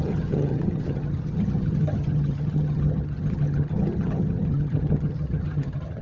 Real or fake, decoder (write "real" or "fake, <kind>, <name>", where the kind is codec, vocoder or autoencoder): fake, vocoder, HiFi-GAN